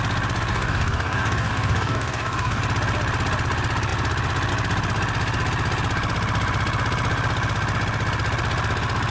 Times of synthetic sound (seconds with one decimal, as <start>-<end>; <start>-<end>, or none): 0.5-2.6